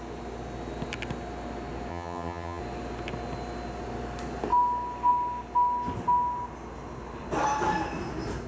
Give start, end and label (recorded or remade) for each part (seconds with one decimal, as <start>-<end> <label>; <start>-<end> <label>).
0.0-1.9 recorded; 1.9-2.6 remade; 2.6-8.5 recorded